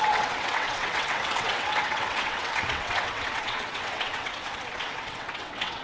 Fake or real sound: fake